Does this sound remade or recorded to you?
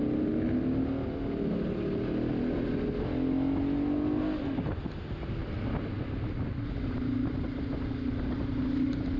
recorded